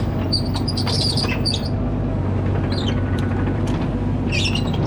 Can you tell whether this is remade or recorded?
remade